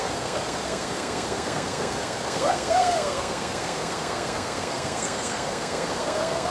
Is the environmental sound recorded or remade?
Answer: remade